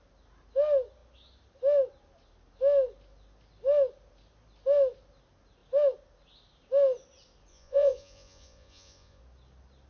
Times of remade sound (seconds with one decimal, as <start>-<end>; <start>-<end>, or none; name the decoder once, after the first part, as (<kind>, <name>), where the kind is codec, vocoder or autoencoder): 7.5-9.2 (vocoder, Vocos)